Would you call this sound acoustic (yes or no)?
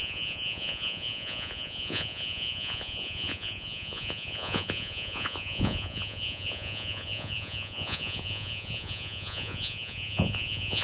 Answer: no